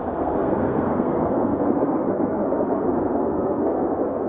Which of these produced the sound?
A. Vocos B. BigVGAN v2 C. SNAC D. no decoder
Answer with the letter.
C